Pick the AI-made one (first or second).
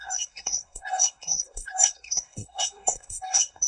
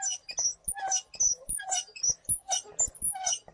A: first